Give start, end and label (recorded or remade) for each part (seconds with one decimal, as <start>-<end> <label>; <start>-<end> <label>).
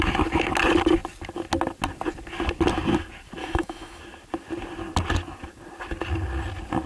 0.0-3.4 recorded; 3.4-4.0 remade; 4.0-6.9 recorded